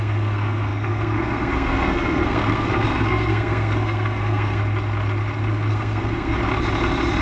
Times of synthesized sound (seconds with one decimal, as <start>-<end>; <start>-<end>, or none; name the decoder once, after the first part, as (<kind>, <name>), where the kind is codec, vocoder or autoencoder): 0.0-4.6 (codec, SNAC); 5.5-6.4